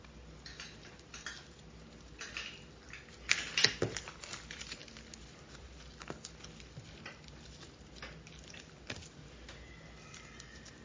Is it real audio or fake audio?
real